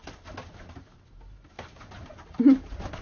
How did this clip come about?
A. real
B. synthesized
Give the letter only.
A